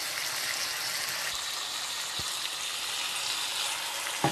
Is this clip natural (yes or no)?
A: yes